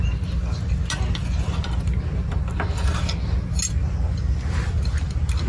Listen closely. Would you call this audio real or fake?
real